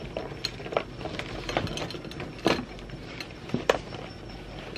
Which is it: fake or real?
real